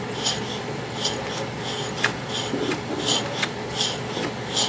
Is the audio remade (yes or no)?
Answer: no